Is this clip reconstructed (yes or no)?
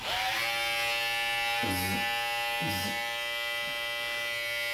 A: no